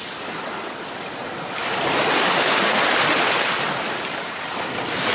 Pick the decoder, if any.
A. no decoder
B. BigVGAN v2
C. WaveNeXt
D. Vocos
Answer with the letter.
A